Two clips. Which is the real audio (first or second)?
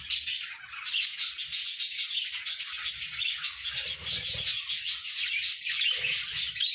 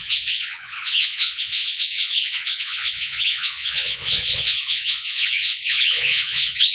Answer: first